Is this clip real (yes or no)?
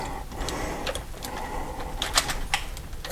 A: yes